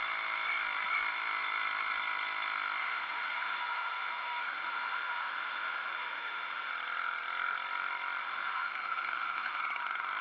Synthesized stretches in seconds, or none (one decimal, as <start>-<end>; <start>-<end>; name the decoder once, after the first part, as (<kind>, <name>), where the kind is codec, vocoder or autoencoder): 2.8-6.7 (autoencoder, DAC-VAE); 8.2-9.6